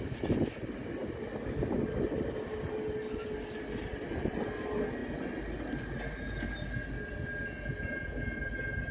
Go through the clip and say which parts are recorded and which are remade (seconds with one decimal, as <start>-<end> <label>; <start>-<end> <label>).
0.0-8.9 recorded